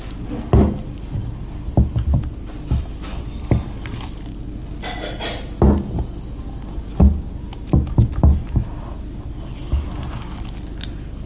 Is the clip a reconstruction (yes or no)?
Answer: no